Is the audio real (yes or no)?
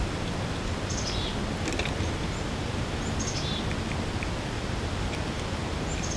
yes